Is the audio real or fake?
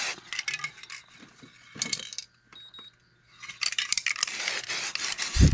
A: fake